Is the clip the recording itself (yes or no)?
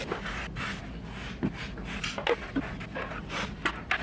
yes